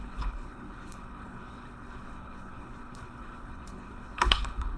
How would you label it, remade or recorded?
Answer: remade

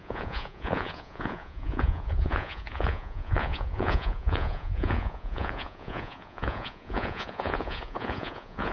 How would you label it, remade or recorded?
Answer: remade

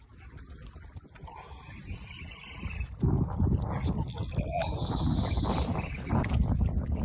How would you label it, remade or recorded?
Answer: recorded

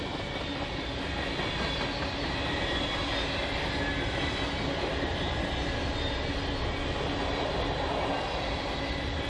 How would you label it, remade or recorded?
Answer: recorded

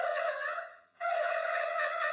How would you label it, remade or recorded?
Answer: remade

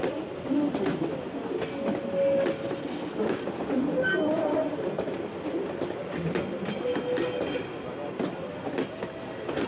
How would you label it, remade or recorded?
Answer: recorded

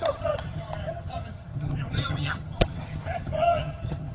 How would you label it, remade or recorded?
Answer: remade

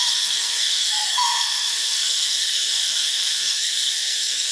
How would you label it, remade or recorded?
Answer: remade